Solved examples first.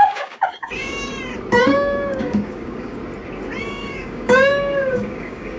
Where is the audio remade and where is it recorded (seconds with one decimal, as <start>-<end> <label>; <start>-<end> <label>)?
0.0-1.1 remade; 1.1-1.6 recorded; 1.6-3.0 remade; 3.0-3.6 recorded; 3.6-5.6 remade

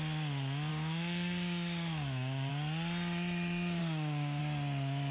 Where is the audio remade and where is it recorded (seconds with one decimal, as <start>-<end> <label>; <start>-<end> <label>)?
0.0-0.7 recorded; 0.7-2.5 remade; 2.5-3.8 recorded; 3.8-4.4 remade; 4.4-5.1 recorded

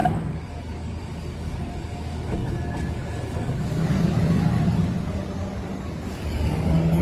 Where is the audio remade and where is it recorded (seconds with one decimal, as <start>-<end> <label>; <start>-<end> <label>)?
0.0-7.0 remade